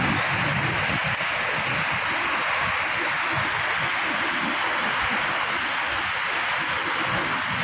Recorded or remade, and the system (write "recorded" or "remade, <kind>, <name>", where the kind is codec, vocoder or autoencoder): recorded